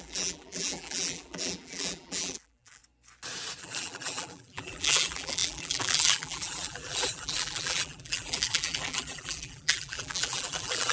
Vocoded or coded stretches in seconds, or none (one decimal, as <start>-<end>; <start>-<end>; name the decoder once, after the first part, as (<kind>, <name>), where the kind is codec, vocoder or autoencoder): 0.0-2.8 (vocoder, BigVGAN v2); 3.6-10.9